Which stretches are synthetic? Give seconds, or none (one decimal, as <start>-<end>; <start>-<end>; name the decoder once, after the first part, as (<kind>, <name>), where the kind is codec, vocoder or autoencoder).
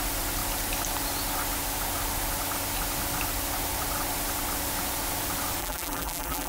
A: 5.6-6.5 (vocoder, BigVGAN v2)